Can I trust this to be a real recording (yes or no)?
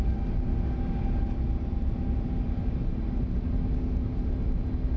yes